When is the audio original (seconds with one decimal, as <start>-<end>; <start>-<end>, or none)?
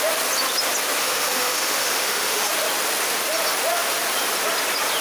0.0-1.0; 2.5-5.0